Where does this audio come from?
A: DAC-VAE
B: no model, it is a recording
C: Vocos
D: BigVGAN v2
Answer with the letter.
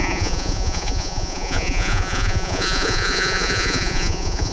C